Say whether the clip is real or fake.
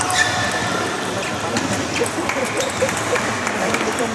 real